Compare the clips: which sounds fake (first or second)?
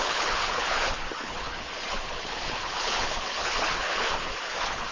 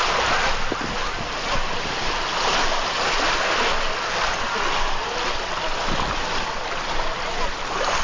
first